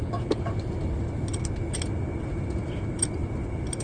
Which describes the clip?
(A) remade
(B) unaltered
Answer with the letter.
B